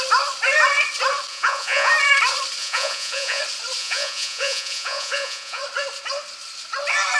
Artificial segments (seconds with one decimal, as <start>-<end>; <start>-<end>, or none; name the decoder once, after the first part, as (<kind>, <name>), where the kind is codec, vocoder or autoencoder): 1.3-1.9 (vocoder, Vocos); 2.6-3.4; 3.8-5.6